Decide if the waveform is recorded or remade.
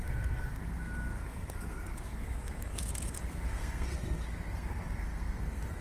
remade